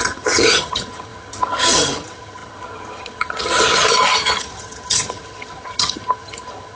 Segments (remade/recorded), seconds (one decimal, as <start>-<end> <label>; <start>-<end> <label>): 0.0-6.8 remade